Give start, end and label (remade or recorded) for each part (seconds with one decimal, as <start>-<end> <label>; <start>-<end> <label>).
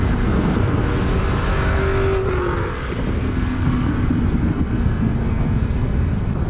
0.0-1.1 remade; 1.1-3.2 recorded; 3.2-6.5 remade